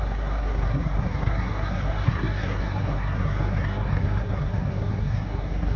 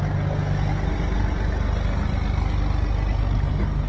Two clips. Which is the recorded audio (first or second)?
second